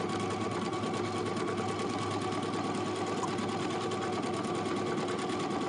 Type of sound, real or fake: real